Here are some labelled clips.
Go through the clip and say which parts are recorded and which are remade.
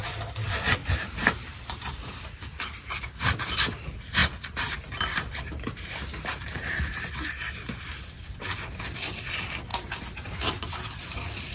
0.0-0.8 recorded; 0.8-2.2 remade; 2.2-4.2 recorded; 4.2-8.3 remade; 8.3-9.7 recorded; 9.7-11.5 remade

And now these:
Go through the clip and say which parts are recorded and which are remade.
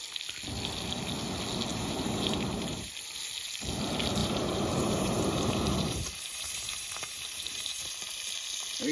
0.0-1.7 recorded; 1.7-2.9 remade; 2.9-4.2 recorded; 4.2-7.9 remade; 7.9-8.9 recorded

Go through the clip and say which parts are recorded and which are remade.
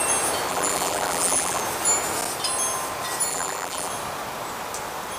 0.0-0.5 recorded; 0.5-1.6 remade; 1.6-3.3 recorded; 3.3-3.9 remade; 3.9-5.2 recorded